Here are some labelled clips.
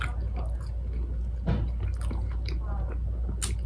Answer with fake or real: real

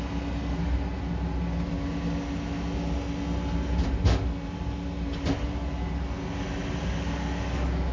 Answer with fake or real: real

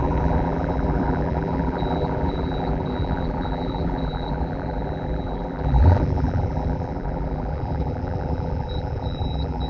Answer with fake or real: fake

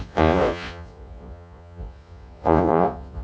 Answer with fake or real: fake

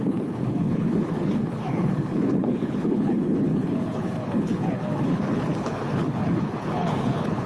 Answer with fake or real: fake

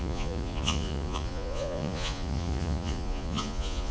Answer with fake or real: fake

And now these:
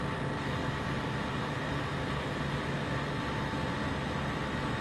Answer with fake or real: real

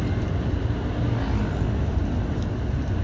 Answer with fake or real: real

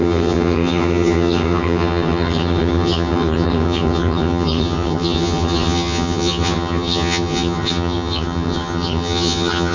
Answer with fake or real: fake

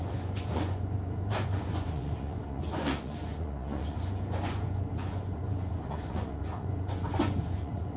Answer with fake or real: fake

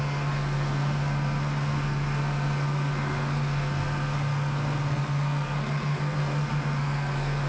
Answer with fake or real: fake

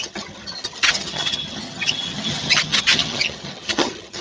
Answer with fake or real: fake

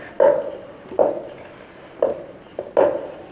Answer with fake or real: real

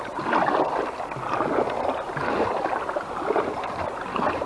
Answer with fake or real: real